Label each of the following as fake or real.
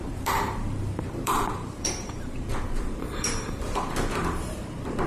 fake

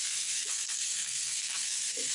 fake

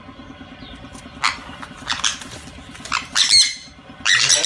real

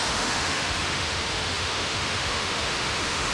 fake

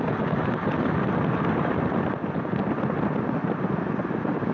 fake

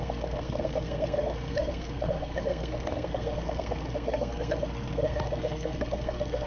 fake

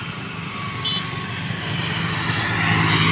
real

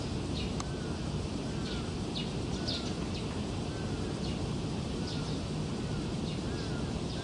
real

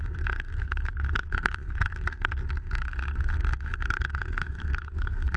fake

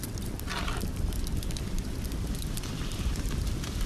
fake